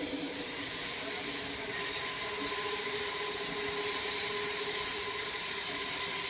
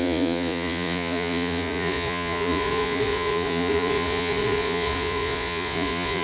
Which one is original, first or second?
first